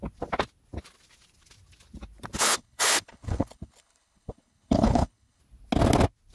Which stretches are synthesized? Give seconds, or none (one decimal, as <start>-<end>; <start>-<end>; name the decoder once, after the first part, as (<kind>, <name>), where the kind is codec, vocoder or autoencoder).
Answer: 2.4-5.4 (codec, HILCodec)